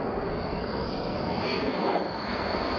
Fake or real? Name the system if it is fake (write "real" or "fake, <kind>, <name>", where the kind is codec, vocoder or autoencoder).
fake, codec, SNAC